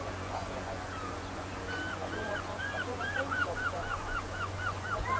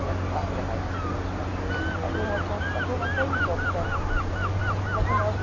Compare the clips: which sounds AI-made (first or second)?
first